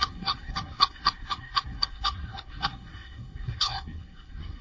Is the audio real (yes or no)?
no